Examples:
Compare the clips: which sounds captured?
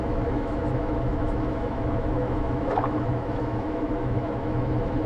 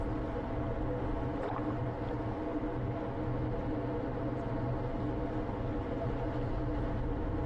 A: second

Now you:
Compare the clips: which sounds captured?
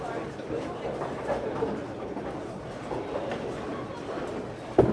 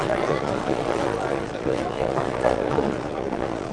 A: first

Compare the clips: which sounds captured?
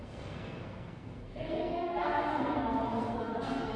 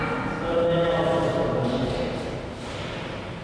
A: second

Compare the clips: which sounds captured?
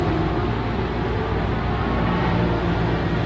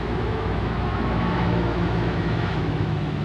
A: first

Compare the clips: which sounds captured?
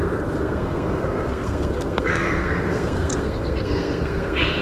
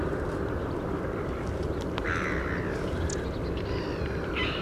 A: second